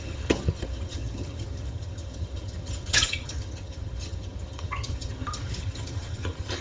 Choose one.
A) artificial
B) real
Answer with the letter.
A